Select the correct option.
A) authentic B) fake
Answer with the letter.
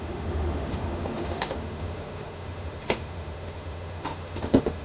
B